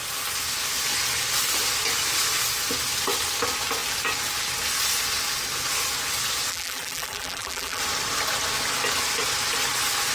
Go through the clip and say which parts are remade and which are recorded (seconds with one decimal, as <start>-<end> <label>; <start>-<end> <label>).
0.0-6.5 recorded; 6.5-7.8 remade; 7.8-10.1 recorded